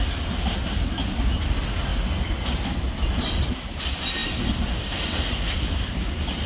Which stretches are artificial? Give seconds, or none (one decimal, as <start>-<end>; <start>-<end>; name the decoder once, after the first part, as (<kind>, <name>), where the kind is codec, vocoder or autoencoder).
none